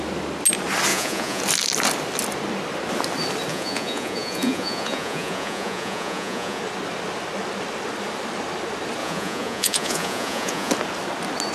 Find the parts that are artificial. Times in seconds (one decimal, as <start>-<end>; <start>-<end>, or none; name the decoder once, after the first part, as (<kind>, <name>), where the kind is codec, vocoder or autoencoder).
0.9-1.4 (vocoder, Vocos); 3.5-6.6; 9.0-10.7